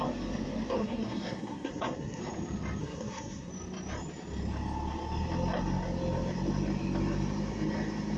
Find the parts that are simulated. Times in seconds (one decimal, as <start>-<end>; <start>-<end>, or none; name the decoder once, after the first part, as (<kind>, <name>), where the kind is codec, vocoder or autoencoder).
0.8-2.2 (codec, SNAC); 2.8-3.5